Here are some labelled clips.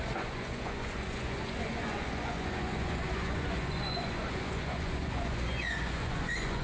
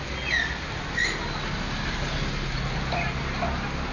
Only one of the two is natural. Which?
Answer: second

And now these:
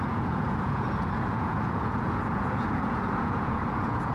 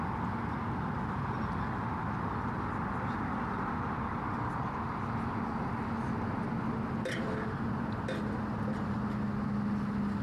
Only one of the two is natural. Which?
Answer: second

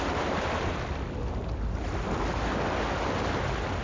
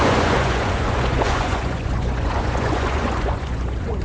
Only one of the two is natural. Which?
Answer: first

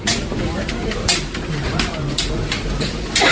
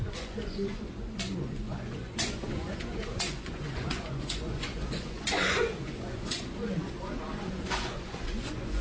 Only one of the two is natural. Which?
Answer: first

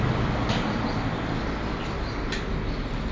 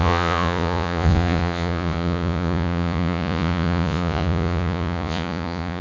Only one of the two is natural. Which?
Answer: first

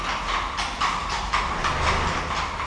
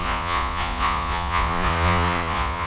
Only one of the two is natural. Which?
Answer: first